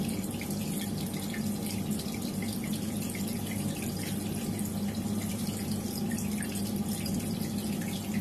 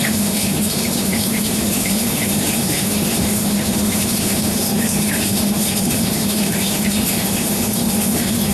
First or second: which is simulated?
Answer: second